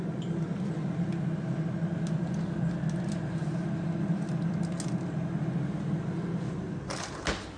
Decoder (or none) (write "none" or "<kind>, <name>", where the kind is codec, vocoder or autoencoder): none